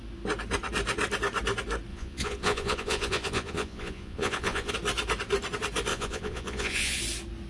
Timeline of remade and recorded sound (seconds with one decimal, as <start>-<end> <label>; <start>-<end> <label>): 0.0-1.9 recorded; 1.9-4.7 remade; 4.7-5.9 recorded; 5.9-7.0 remade; 7.0-7.5 recorded